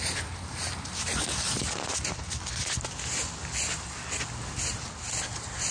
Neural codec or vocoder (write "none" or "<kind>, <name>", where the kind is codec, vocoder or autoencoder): none